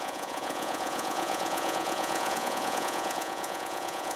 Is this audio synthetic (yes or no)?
yes